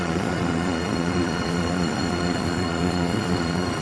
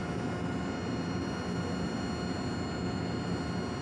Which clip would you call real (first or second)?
second